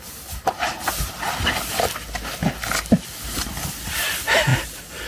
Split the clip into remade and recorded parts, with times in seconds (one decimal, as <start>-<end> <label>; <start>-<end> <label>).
0.0-5.1 recorded